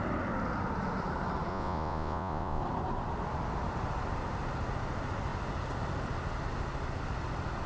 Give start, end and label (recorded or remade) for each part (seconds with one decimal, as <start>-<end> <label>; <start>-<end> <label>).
0.0-1.5 recorded; 1.5-2.6 remade; 2.6-7.7 recorded